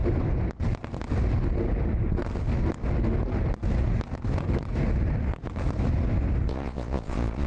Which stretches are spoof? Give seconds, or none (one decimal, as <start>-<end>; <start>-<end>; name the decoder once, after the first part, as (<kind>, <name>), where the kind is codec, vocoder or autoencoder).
6.5-7.5 (vocoder, Vocos)